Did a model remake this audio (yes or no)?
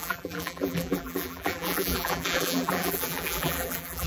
yes